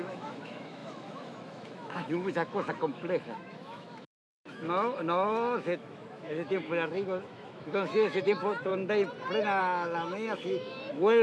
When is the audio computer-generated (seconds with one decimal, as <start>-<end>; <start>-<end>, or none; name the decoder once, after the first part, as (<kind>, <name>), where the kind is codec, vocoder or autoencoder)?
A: 0.0-8.7 (autoencoder, DAC-VAE); 9.6-11.2